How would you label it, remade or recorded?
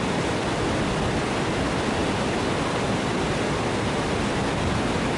recorded